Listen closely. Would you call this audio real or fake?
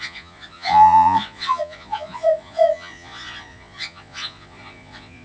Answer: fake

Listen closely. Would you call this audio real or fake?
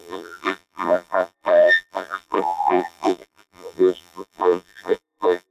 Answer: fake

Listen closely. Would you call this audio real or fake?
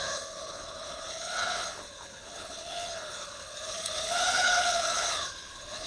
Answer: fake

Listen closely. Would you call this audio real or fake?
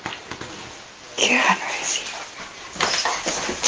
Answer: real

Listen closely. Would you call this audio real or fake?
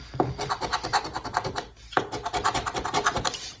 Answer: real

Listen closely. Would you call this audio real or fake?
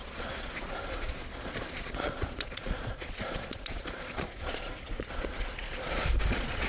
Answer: fake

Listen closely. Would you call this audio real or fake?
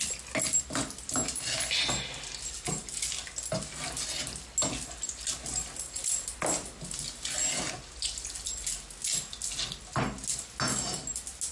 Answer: real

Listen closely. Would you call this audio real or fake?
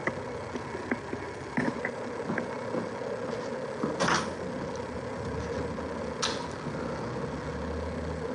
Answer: real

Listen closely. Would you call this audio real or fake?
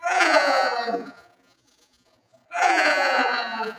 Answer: fake